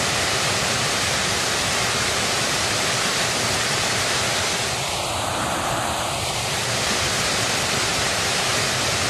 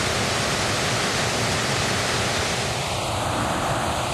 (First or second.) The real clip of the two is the second